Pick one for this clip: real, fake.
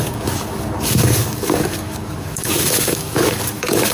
fake